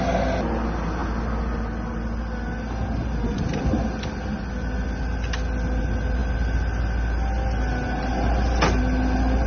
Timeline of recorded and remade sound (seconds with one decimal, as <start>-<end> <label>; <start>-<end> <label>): 0.0-9.5 recorded